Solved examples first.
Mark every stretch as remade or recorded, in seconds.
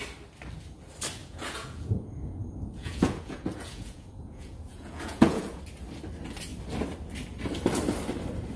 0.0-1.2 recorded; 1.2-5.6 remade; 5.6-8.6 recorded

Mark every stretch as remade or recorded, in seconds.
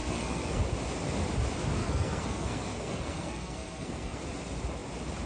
0.0-0.6 remade; 0.6-1.8 recorded; 1.8-4.2 remade; 4.2-5.3 recorded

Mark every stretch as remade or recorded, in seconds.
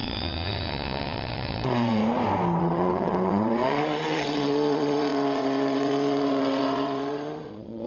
0.0-2.0 remade; 2.0-2.6 recorded; 2.6-7.9 remade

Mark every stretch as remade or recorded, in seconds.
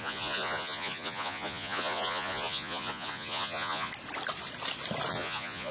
0.0-3.9 remade; 3.9-5.1 recorded; 5.1-5.7 remade